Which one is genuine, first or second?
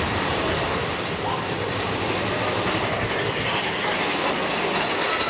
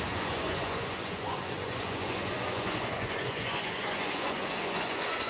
first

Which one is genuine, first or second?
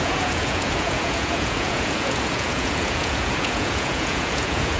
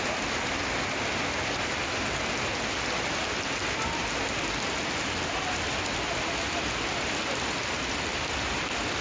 second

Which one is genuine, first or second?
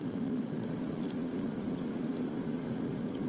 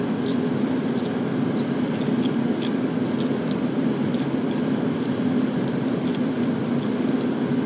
second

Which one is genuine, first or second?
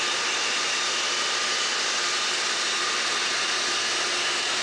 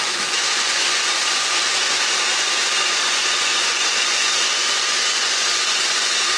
first